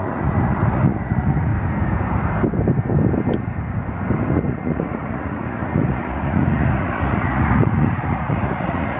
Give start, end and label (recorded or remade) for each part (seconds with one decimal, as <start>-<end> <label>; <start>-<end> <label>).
0.0-1.5 remade; 1.5-4.3 recorded; 4.3-9.0 remade